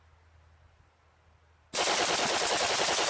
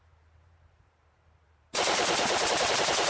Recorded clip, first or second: first